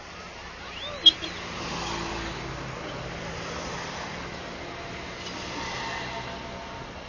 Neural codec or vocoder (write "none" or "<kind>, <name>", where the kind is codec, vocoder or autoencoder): none